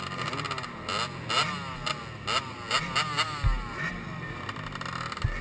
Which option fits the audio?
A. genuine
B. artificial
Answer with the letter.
A